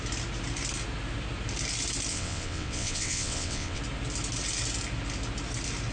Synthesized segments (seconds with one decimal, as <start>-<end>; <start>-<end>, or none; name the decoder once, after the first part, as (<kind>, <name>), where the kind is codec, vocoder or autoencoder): 2.1-3.8 (vocoder, WaveNeXt)

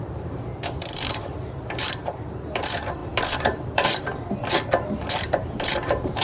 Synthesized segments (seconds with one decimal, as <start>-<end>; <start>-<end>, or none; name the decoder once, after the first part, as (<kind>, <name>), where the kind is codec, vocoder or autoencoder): 0.0-6.2 (vocoder, BigVGAN v2)

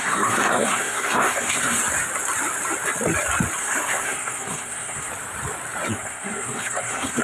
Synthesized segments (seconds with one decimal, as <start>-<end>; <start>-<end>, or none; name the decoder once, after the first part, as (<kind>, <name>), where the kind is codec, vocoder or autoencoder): 0.0-1.8 (codec, SNAC); 3.6-5.1; 5.9-7.2

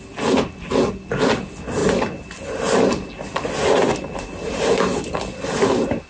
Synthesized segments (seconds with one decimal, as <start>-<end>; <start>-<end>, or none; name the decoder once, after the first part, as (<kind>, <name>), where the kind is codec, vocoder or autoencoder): none

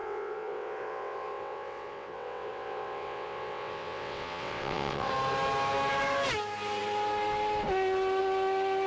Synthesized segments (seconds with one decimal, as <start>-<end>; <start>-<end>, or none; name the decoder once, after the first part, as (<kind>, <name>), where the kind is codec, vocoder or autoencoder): 0.0-5.1 (vocoder, WaveNeXt)

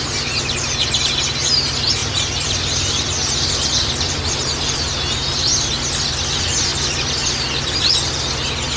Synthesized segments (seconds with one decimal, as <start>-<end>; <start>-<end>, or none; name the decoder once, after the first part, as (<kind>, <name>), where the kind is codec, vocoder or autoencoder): 2.0-4.7 (vocoder, BigVGAN v2); 6.7-8.0